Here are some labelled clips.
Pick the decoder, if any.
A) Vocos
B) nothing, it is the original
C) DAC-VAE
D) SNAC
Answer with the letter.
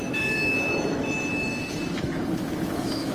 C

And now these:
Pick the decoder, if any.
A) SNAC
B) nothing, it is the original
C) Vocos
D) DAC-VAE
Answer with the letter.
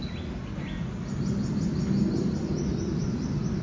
B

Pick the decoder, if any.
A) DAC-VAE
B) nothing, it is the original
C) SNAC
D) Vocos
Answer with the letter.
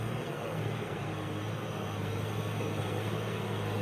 C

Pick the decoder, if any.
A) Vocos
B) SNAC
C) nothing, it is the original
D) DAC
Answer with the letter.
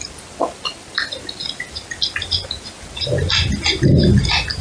C